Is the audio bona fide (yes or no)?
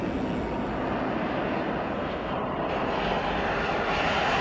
yes